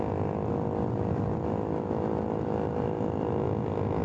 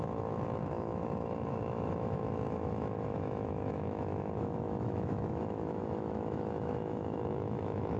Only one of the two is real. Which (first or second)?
first